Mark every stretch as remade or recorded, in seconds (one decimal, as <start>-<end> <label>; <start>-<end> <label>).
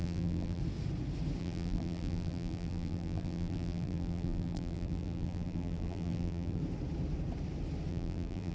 0.0-0.6 remade; 0.6-1.4 recorded; 1.4-6.6 remade; 6.6-7.9 recorded; 7.9-8.5 remade